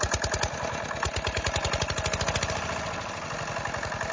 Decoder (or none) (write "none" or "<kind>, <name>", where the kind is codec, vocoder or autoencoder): none